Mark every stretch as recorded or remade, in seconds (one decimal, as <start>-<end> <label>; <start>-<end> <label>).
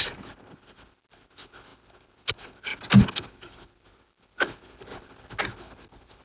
0.0-6.2 recorded